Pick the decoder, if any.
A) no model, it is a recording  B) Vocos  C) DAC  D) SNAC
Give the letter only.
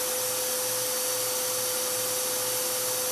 A